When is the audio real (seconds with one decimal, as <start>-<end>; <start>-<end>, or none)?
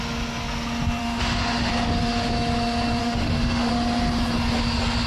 0.0-1.0; 1.7-3.0; 3.7-5.1